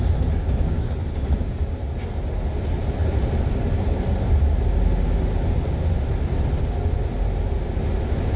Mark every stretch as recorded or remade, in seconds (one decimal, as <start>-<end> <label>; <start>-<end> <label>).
0.0-0.4 recorded; 0.4-1.8 remade; 1.8-8.4 recorded

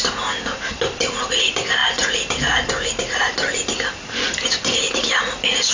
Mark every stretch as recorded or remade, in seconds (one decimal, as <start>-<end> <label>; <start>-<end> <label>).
0.0-5.7 recorded